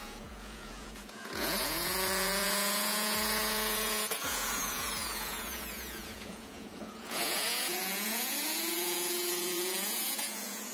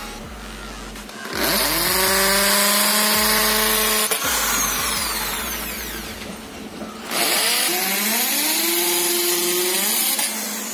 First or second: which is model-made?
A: first